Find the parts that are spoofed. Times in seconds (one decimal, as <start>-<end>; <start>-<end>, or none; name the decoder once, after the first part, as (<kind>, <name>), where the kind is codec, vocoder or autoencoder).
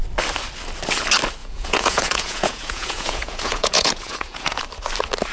1.4-4.6 (vocoder, Vocos)